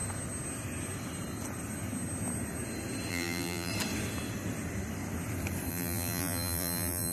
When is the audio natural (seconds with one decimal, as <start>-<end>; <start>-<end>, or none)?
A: 0.0-3.1; 3.7-5.7